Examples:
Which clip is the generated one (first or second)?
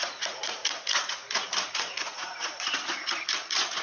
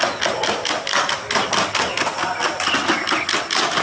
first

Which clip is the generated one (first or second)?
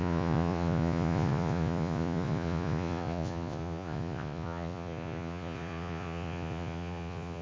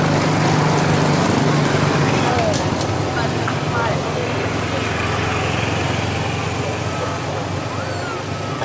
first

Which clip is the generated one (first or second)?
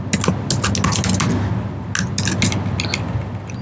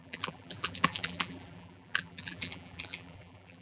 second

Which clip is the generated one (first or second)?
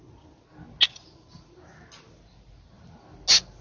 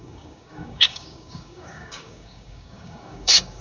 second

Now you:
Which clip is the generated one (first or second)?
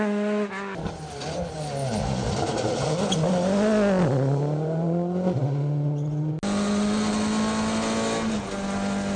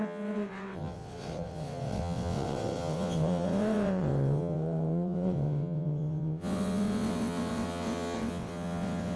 second